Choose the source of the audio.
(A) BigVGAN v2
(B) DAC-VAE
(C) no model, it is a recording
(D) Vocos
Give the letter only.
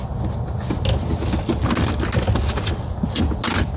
C